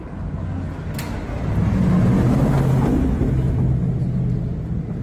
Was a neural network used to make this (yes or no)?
no